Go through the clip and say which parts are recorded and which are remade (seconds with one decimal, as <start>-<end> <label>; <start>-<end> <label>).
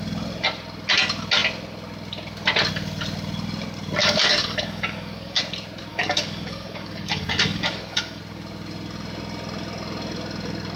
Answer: 0.0-4.0 recorded; 4.0-5.4 remade; 5.4-5.9 recorded; 5.9-8.2 remade; 8.2-10.8 recorded